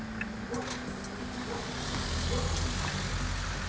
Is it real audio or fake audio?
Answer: real